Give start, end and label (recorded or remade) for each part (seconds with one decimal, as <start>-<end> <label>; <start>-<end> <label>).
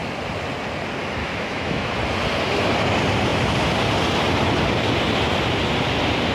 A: 0.0-1.2 recorded; 1.2-1.9 remade; 1.9-6.3 recorded